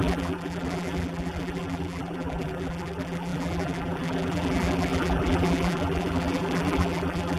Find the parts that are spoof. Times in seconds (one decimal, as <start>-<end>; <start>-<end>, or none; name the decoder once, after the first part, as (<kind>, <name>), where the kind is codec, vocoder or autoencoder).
0.0-7.4 (vocoder, BigVGAN v2)